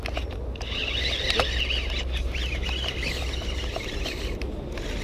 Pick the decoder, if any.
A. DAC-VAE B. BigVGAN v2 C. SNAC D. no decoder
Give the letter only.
D